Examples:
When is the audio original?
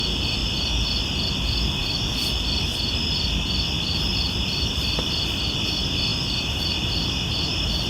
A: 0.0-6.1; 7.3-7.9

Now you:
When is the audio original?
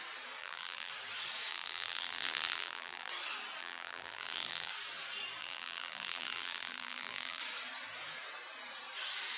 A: 0.0-0.4; 0.9-1.5; 3.1-3.6; 4.7-5.4; 7.4-9.4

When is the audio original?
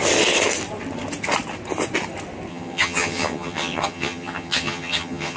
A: 0.0-2.5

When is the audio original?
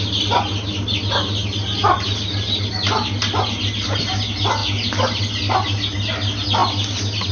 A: 0.0-1.4; 2.7-4.6; 5.2-7.3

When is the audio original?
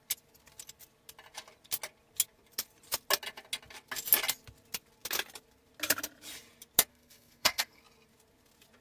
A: 0.0-6.9; 7.8-8.8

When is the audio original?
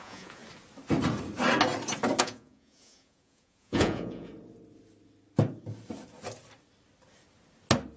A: 0.4-2.2; 4.3-8.0